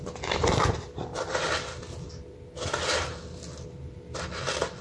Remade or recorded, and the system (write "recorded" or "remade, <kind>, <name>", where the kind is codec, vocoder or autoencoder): recorded